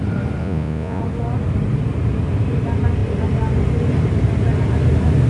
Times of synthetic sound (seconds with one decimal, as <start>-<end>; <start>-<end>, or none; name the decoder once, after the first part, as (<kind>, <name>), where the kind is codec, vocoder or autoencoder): 0.4-1.0 (vocoder, Vocos)